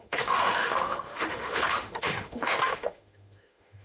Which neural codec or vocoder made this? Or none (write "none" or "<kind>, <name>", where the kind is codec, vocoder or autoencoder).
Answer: autoencoder, DAC-VAE